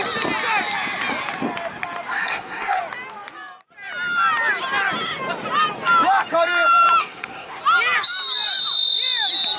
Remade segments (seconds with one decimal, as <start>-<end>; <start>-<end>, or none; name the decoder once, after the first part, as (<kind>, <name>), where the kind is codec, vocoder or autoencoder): 2.1-2.8 (codec, SNAC); 7.0-7.6

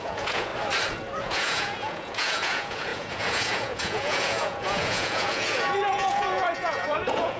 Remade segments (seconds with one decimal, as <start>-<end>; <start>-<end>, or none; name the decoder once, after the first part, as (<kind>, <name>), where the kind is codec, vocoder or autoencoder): 0.0-0.5 (vocoder, Vocos); 1.2-7.4

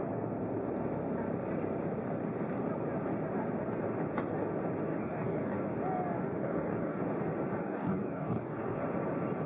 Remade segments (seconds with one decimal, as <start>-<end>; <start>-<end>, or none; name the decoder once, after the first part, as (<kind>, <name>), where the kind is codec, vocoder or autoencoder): 4.9-5.6 (codec, DAC); 6.4-7.0; 7.6-8.8

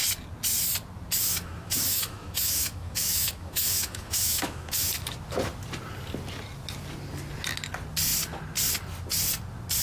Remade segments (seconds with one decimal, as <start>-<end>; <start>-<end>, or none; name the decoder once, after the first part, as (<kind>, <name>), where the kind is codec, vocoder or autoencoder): 1.2-4.9 (autoencoder, DAC-VAE)

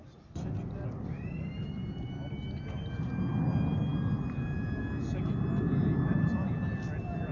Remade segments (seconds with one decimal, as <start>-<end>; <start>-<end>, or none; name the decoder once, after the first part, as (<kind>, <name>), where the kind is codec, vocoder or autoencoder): none

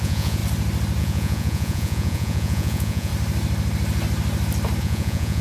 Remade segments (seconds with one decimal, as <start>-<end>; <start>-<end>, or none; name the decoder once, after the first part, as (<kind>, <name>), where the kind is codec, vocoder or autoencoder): 0.0-0.4 (vocoder, Vocos); 1.0-3.1; 4.8-5.4

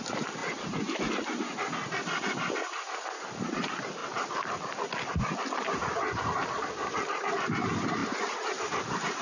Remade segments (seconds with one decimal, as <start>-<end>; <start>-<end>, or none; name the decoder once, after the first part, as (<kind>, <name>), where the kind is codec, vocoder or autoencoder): 0.0-4.0 (vocoder, BigVGAN v2); 6.6-9.2

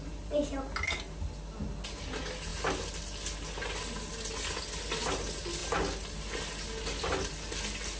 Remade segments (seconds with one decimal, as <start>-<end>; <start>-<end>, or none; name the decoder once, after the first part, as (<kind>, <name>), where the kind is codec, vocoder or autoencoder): none